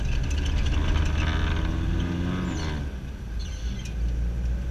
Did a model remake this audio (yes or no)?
no